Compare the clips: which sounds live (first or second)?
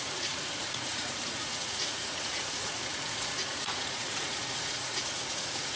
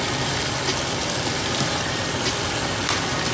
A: second